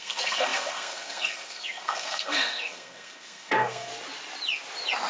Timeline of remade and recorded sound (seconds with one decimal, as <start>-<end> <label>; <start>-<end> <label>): 0.0-3.9 remade; 3.9-5.1 recorded